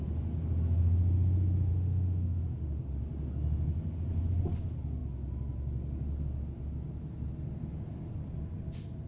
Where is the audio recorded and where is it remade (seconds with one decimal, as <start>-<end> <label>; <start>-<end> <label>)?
0.0-1.7 recorded; 1.7-2.8 remade; 2.8-9.1 recorded